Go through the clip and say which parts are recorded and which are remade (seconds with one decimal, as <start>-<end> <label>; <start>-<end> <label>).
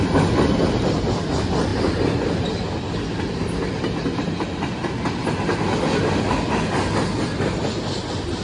0.0-8.4 recorded